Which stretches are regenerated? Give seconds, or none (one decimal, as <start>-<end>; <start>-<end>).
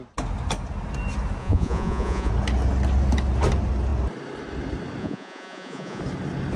1.4-2.3; 5.0-6.0